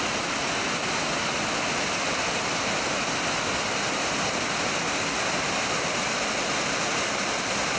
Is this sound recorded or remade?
recorded